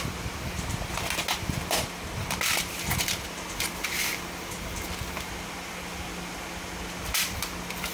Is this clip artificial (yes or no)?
no